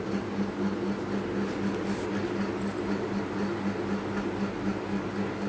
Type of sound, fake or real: real